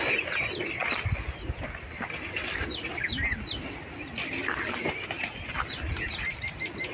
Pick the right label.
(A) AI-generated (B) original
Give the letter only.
B